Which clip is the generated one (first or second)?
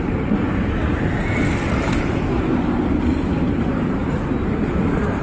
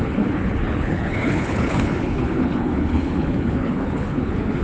second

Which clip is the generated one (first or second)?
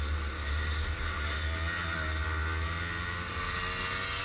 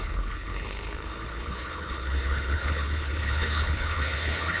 second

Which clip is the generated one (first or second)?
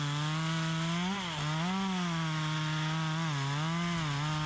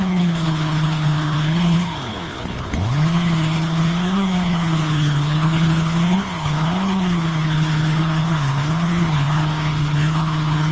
second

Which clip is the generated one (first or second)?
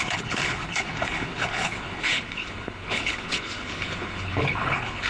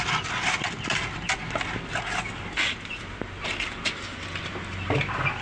first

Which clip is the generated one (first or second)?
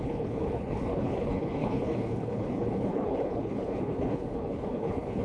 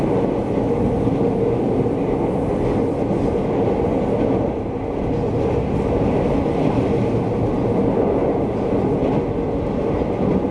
first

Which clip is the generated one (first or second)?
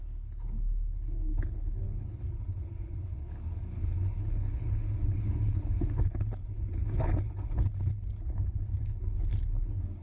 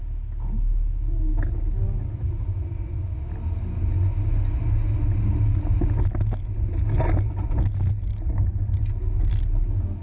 first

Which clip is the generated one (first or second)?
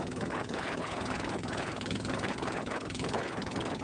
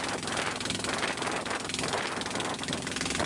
first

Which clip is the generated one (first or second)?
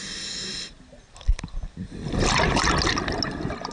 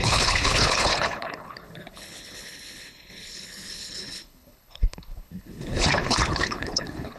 second